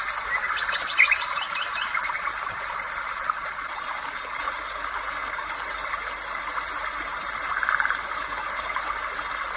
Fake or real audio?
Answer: real